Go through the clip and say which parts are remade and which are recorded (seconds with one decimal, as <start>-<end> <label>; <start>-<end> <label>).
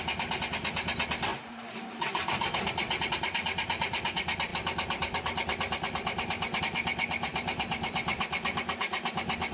0.0-1.3 recorded; 1.3-2.7 remade; 2.7-7.3 recorded; 7.3-8.6 remade; 8.6-9.5 recorded